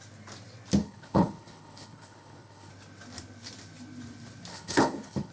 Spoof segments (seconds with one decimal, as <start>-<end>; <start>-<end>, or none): 0.8-2.7; 4.5-5.3

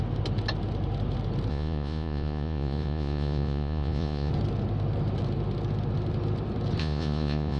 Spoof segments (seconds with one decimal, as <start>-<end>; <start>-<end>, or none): 1.5-4.3; 6.8-7.6

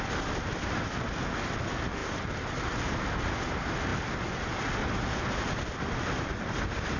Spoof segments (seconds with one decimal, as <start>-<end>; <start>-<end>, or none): none